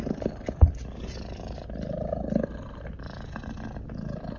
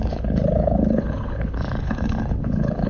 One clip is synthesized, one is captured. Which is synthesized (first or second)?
second